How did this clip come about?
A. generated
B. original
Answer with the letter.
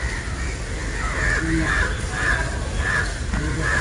B